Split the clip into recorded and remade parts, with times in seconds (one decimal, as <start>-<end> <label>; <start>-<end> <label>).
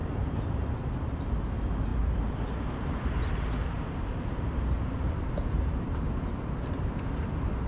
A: 0.0-0.7 remade; 0.7-1.9 recorded; 1.9-5.7 remade; 5.7-7.7 recorded